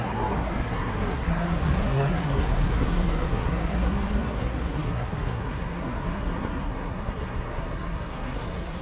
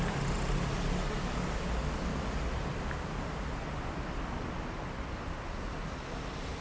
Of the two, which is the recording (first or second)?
second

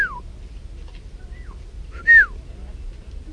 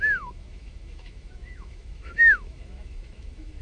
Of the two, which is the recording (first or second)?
first